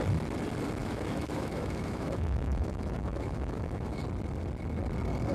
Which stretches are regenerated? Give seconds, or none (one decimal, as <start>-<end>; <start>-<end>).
0.8-4.0